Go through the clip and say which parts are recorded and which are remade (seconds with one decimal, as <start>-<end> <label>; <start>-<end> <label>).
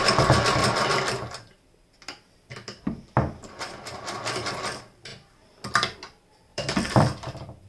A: 0.0-0.6 recorded; 0.6-4.6 remade; 4.6-6.5 recorded; 6.5-7.7 remade